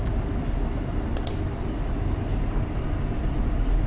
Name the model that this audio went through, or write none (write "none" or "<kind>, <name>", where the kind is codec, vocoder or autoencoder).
none